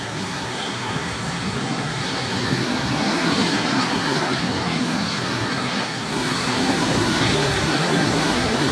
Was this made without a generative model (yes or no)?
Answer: no